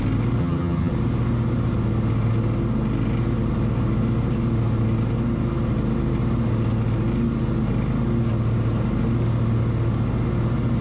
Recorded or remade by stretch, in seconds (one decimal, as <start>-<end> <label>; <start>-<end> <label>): 0.0-0.4 recorded; 0.4-0.9 remade; 0.9-10.8 recorded